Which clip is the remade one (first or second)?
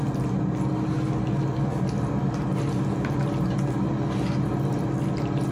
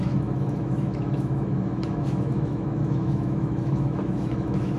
second